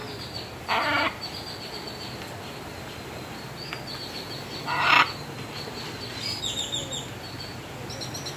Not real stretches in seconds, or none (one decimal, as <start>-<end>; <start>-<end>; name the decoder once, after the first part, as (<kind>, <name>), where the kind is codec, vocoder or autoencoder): none